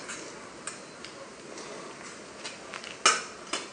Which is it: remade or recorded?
recorded